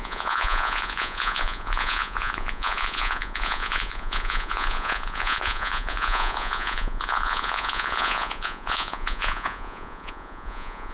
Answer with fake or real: fake